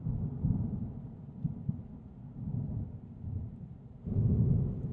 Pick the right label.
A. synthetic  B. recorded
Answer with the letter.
B